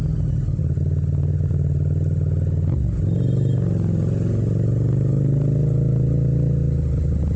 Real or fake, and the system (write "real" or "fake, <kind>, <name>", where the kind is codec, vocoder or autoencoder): real